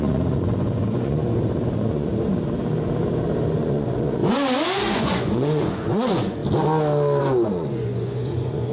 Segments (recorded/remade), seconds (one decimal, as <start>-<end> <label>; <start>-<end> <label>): 0.0-2.1 remade; 2.1-3.6 recorded; 3.6-4.2 remade; 4.2-4.8 recorded; 4.8-6.4 remade; 6.4-7.2 recorded; 7.2-8.7 remade